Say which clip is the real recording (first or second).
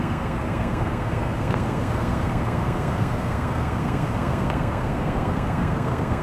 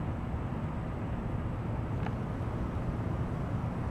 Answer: second